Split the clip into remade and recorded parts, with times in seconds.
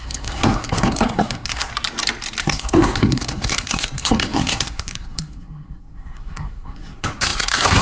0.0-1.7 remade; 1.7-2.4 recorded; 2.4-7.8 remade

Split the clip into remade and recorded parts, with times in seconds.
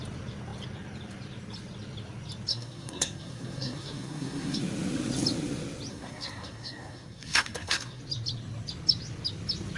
0.0-2.5 recorded; 2.5-4.6 remade; 4.6-5.9 recorded; 5.9-8.0 remade; 8.0-9.8 recorded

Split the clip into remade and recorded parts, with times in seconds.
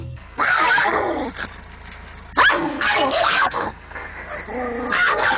0.0-1.2 remade; 1.2-2.5 recorded; 2.5-4.1 remade; 4.1-4.9 recorded; 4.9-5.4 remade